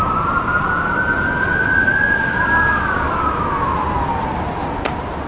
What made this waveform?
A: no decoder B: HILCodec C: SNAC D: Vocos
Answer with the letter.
A